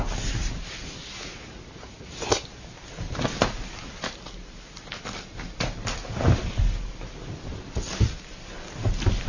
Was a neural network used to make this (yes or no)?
no